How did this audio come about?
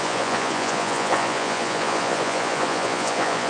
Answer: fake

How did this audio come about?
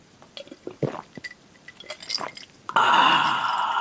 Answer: real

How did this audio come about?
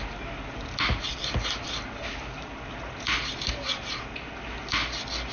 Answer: real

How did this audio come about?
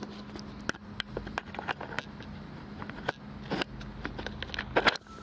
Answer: real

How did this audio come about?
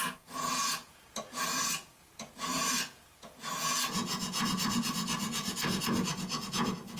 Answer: fake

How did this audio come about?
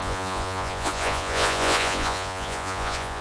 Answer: fake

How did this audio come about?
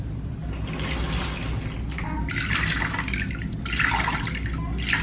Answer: real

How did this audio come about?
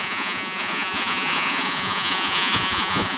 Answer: fake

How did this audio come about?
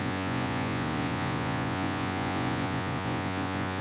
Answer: fake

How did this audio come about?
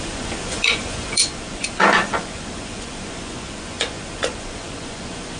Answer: fake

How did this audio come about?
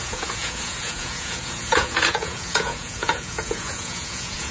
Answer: fake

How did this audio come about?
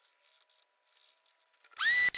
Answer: real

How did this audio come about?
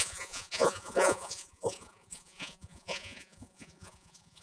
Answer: fake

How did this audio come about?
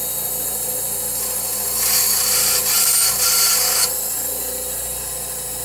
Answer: real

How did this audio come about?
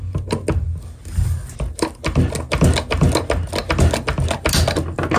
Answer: real